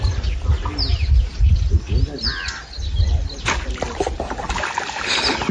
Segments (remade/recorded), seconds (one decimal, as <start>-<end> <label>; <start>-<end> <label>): 0.0-5.5 recorded